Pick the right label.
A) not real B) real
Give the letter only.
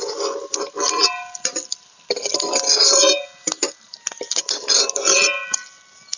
B